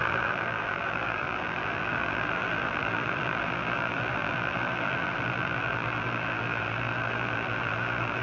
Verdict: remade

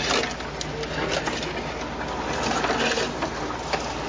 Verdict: recorded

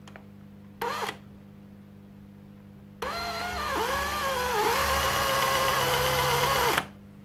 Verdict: recorded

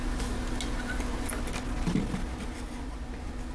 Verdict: recorded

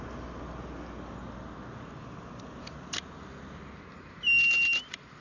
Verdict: recorded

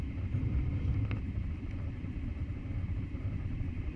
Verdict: remade